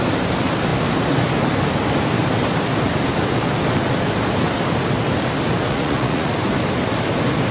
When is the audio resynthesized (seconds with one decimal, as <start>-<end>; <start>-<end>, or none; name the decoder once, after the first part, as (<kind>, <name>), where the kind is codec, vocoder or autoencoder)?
5.7-6.3 (vocoder, Vocos)